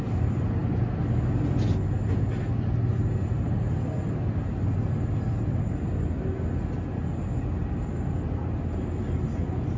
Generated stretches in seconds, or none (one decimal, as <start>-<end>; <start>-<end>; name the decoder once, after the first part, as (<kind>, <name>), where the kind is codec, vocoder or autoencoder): none